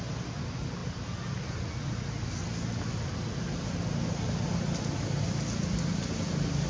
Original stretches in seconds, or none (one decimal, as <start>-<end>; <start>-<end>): 0.0-6.7